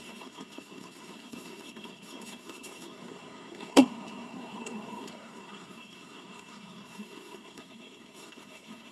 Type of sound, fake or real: fake